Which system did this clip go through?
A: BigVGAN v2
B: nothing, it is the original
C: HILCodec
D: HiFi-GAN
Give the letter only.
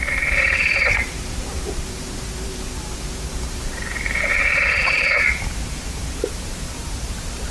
A